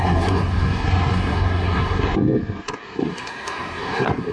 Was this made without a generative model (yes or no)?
no